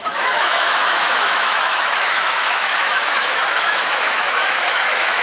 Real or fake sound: fake